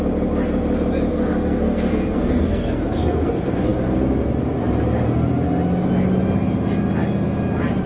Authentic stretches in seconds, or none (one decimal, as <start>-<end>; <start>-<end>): 0.0-1.1; 3.3-7.9